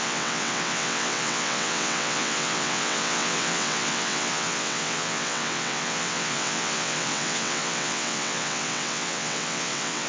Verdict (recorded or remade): remade